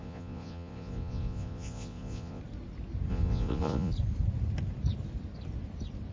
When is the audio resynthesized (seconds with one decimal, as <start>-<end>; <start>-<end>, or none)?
0.0-2.4; 3.1-3.9